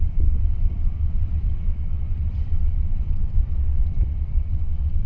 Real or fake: fake